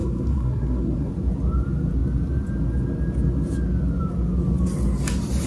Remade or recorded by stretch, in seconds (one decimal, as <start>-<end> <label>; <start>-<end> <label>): 0.0-1.1 remade; 1.1-5.5 recorded